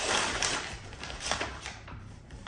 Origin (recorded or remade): remade